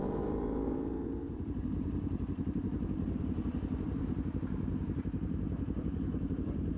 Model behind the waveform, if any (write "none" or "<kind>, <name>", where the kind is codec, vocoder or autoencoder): vocoder, BigVGAN v2